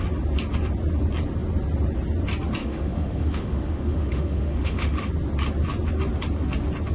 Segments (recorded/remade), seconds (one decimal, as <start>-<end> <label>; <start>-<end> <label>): 0.0-2.6 recorded; 2.6-5.1 remade; 5.1-6.9 recorded

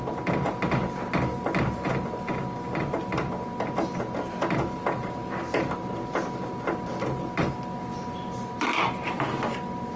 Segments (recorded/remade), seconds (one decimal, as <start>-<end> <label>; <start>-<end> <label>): 0.0-10.0 recorded

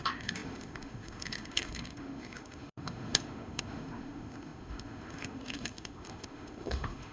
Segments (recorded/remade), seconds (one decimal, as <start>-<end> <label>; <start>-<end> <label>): 0.0-7.1 remade

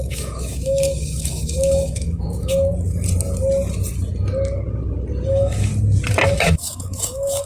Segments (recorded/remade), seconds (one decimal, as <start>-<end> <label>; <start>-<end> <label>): 0.0-2.7 remade; 2.7-5.3 recorded; 5.3-5.7 remade; 5.7-6.3 recorded; 6.3-7.5 remade

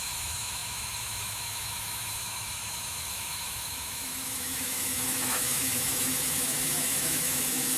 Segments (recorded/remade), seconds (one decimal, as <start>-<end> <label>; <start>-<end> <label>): 0.0-7.8 remade

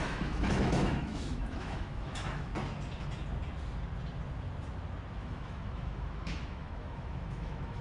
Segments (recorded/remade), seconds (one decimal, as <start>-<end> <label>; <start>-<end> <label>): 0.0-2.5 remade; 2.5-5.2 recorded; 5.2-7.8 remade